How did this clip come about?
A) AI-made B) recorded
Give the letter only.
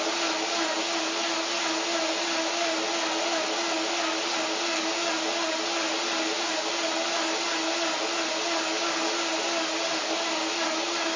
B